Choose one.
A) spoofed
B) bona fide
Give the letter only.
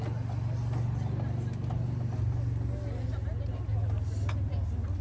B